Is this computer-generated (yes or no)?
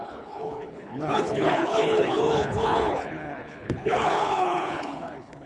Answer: yes